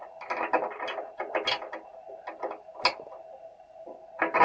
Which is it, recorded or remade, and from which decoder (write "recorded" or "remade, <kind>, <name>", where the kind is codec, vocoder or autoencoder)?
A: recorded